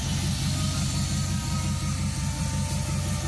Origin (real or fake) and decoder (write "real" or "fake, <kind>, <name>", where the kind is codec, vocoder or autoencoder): real